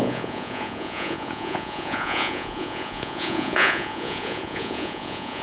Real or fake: fake